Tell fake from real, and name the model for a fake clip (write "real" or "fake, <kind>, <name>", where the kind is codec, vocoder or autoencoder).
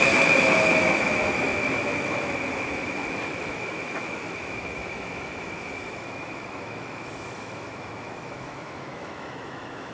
fake, autoencoder, DAC-VAE